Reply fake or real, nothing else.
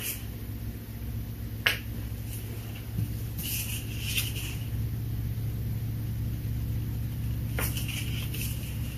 real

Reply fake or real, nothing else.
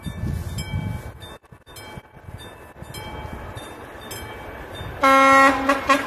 real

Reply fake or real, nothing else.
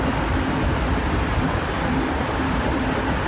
real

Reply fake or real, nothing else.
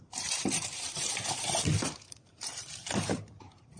fake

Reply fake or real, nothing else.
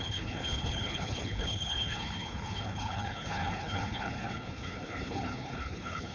fake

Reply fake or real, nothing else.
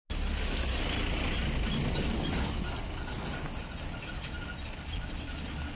real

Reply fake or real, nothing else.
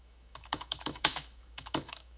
fake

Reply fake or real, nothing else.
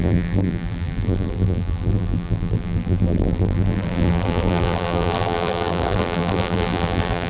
fake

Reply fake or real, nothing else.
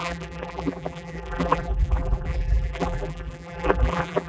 fake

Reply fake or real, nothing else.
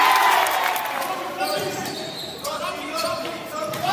fake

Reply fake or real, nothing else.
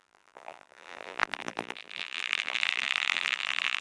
fake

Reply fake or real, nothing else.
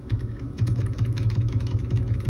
fake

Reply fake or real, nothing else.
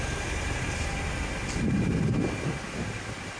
real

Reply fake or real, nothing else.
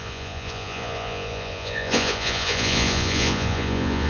fake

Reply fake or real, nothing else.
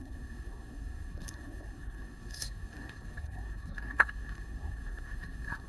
fake